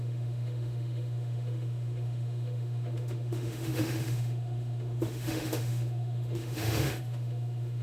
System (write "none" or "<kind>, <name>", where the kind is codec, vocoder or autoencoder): autoencoder, DAC-VAE